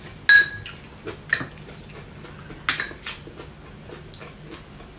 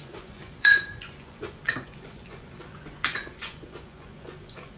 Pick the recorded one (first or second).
first